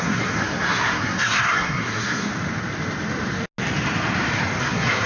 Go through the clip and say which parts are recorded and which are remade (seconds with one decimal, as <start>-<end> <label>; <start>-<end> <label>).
0.0-2.3 remade; 2.3-4.6 recorded; 4.6-5.1 remade